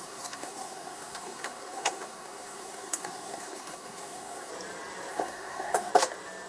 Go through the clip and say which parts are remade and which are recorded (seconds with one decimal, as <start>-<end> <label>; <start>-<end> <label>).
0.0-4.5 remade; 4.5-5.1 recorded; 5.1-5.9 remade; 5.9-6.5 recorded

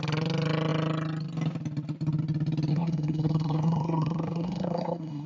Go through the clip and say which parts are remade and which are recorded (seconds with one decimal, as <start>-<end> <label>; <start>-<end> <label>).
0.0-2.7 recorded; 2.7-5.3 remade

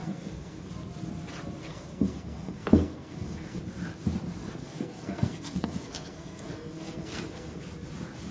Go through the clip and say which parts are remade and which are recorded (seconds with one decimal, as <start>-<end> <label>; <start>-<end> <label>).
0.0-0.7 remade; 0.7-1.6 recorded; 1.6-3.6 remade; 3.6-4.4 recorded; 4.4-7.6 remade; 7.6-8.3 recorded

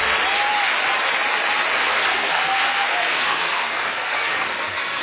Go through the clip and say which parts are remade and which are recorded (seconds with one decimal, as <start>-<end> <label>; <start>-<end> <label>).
0.0-1.8 recorded; 1.8-5.0 remade